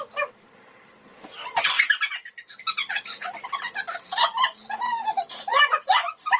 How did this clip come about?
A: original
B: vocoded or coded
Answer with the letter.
A